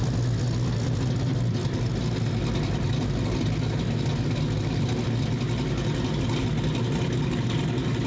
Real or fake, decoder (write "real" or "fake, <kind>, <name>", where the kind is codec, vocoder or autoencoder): real